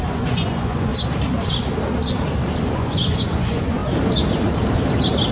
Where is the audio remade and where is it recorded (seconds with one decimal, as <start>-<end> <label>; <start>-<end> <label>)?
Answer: 0.0-0.9 remade; 0.9-2.6 recorded; 2.6-3.8 remade; 3.8-5.3 recorded